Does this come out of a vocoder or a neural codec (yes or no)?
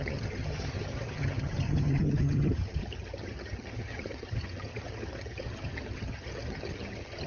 yes